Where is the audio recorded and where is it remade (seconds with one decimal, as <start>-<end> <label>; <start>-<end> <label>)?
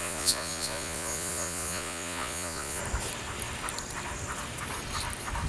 0.0-2.8 remade; 2.8-5.5 recorded